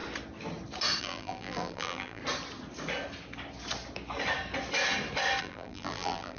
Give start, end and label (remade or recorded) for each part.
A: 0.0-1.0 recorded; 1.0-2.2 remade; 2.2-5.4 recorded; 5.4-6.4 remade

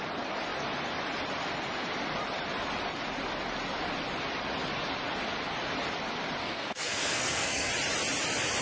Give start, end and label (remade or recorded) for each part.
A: 0.0-6.4 recorded; 6.4-7.7 remade; 7.7-8.6 recorded